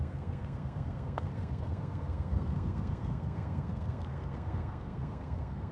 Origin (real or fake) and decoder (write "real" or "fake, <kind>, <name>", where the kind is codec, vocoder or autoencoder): fake, codec, SNAC